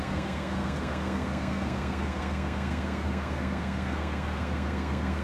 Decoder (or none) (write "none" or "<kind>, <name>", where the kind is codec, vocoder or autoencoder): codec, SNAC